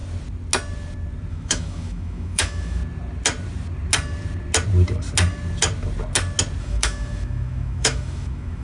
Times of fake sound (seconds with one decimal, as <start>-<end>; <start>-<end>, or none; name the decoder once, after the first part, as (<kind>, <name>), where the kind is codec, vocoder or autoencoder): 1.3-2.8 (autoencoder, DAC-VAE); 6.6-8.6